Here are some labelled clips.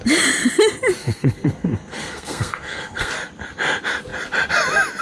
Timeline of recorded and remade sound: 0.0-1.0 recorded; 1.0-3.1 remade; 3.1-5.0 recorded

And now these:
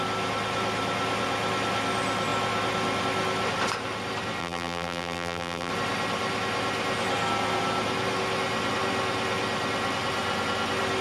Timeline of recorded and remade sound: 0.0-4.4 recorded; 4.4-5.7 remade; 5.7-11.0 recorded

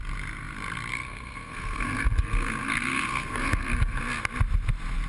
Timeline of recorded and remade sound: 0.0-0.9 recorded; 0.9-4.0 remade; 4.0-5.1 recorded

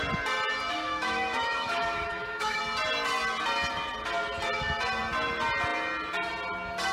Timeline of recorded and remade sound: 0.0-0.9 recorded; 0.9-2.6 remade; 2.6-6.9 recorded

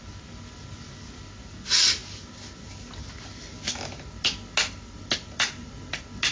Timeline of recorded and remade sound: 0.0-6.3 recorded

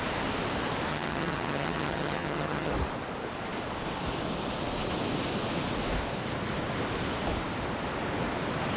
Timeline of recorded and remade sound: 0.0-0.9 recorded; 0.9-2.7 remade; 2.7-8.8 recorded

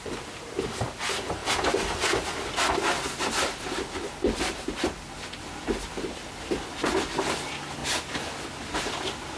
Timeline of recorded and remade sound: 0.0-1.4 remade; 1.4-5.7 recorded; 5.7-9.4 remade

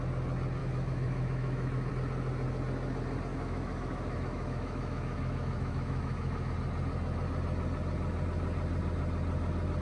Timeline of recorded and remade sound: 0.0-0.6 recorded; 0.6-1.9 remade; 1.9-3.3 recorded; 3.3-6.5 remade; 6.5-9.8 recorded